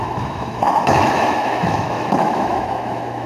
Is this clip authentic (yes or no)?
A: no